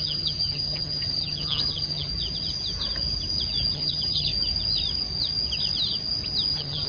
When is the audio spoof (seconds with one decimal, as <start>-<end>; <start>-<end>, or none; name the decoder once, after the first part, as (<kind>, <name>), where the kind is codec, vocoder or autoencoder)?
0.0-2.1 (vocoder, HiFi-GAN); 3.7-4.3; 6.5-6.9